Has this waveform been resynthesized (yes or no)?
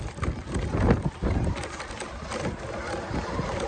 no